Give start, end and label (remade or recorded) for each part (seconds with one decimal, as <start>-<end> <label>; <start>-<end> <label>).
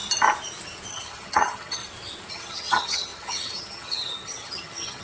0.0-0.9 recorded; 0.9-1.8 remade; 1.8-2.3 recorded; 2.3-5.0 remade